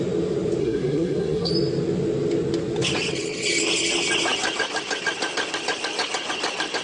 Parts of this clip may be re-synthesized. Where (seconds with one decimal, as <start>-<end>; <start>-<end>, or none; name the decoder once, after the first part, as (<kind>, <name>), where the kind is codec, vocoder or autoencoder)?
0.6-1.5 (codec, SNAC)